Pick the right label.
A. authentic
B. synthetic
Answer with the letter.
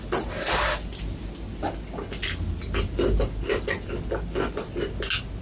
A